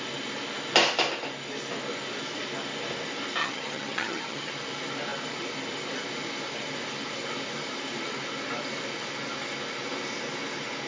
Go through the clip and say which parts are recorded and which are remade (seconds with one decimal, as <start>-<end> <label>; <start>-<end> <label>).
0.0-3.4 recorded; 3.4-4.5 remade; 4.5-10.9 recorded